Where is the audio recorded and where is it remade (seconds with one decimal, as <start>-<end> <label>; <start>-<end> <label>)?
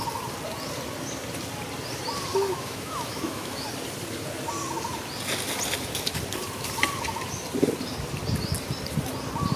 0.0-2.3 recorded; 2.3-3.6 remade; 3.6-9.6 recorded